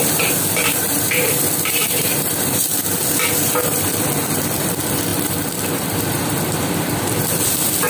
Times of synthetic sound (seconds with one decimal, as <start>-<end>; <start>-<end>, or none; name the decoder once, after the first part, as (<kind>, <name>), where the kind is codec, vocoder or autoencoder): 0.0-7.9 (vocoder, BigVGAN v2)